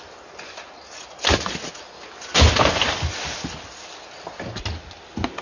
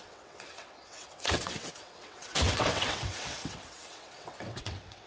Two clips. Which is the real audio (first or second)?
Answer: first